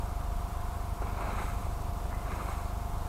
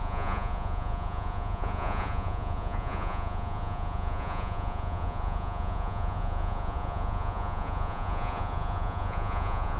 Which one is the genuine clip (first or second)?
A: first